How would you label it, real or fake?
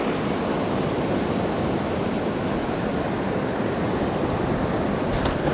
real